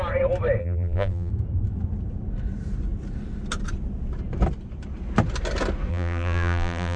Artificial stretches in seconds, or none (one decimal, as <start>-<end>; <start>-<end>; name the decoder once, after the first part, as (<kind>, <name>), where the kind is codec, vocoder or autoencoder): 0.6-1.3 (vocoder, BigVGAN v2); 5.9-7.0